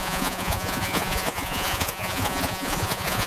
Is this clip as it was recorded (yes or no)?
no